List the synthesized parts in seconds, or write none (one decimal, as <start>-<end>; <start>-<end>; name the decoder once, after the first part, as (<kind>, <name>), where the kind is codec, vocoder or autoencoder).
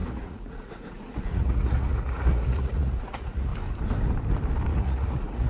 0.0-3.5 (vocoder, Vocos); 4.7-5.5